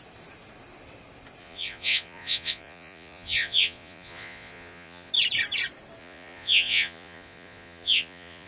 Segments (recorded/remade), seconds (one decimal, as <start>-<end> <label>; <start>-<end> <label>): 0.0-1.4 recorded; 1.4-5.1 remade; 5.1-6.0 recorded; 6.0-8.5 remade